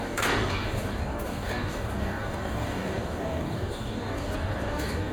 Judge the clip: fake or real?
fake